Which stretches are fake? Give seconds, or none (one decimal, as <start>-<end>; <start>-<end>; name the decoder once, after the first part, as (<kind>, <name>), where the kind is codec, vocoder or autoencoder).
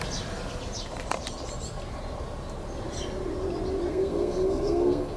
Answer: 3.9-5.2 (codec, SNAC)